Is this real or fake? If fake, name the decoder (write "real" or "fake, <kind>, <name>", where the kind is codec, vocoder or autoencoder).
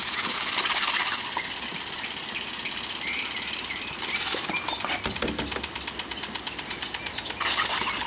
real